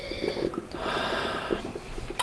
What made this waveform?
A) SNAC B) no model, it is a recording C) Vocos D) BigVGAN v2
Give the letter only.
B